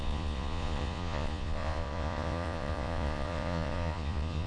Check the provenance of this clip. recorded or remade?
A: remade